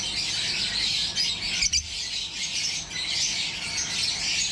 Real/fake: real